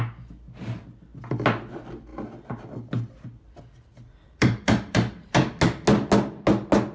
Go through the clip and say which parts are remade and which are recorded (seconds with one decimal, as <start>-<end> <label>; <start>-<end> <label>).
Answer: 0.0-4.2 recorded; 4.2-5.4 remade; 5.4-6.9 recorded